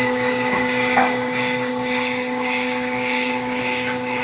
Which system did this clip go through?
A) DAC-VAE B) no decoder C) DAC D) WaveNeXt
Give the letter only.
C